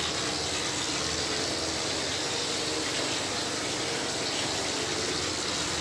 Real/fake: real